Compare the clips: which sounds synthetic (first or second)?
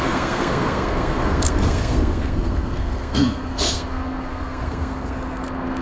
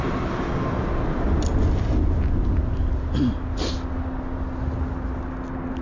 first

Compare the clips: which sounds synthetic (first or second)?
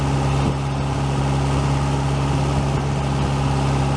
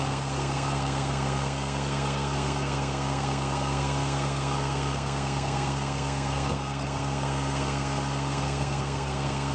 second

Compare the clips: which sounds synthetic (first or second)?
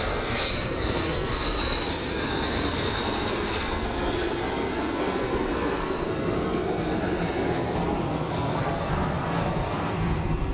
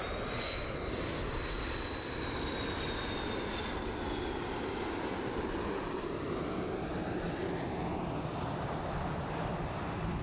first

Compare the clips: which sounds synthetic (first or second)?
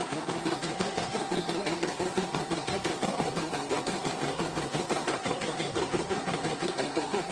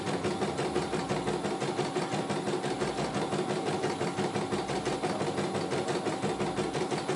first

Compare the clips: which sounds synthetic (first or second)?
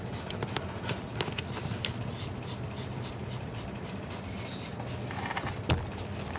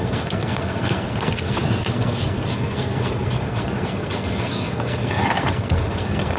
second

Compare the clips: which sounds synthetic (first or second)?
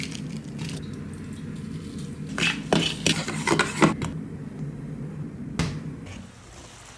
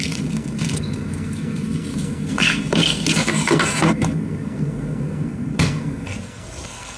second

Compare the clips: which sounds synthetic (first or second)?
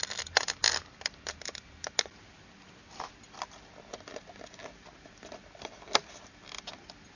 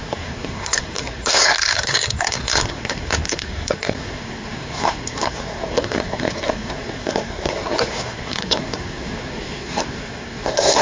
second